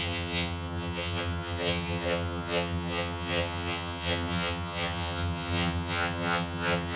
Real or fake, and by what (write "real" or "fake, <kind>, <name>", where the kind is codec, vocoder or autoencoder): fake, vocoder, HiFi-GAN